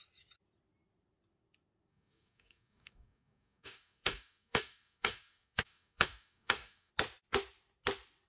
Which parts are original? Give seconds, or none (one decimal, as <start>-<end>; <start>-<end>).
0.0-1.9; 6.9-8.3